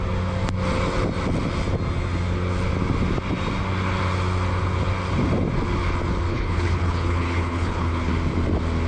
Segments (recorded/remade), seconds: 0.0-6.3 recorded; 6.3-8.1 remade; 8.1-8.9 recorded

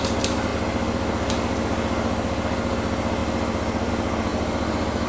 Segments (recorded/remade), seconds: 0.0-4.3 recorded; 4.3-5.1 remade

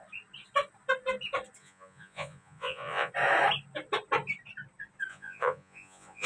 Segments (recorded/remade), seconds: 0.0-1.6 recorded; 1.6-3.1 remade; 3.1-5.1 recorded; 5.1-6.3 remade

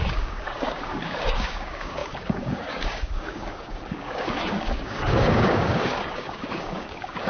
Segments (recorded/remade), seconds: 0.0-7.3 remade

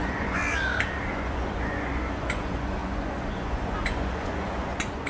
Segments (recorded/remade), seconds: 0.0-0.4 remade; 0.4-1.1 recorded; 1.1-5.1 remade

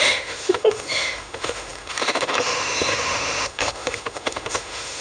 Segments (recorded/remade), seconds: 0.0-5.0 remade

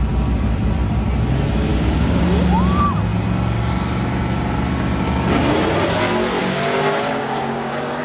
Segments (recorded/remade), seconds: 0.0-1.7 recorded; 1.7-2.2 remade; 2.2-6.4 recorded; 6.4-8.0 remade

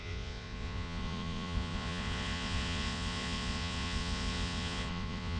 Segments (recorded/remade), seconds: 0.0-5.4 remade